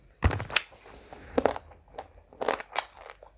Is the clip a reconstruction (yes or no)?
no